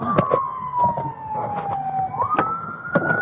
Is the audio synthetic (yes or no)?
no